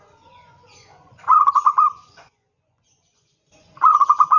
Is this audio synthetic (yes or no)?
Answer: yes